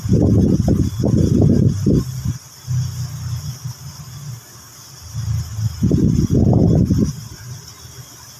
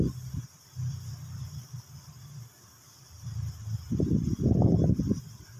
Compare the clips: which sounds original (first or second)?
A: first